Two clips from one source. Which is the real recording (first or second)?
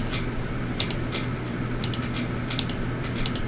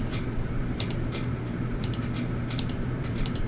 first